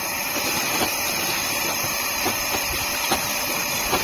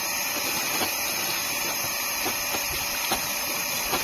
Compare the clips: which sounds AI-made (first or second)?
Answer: first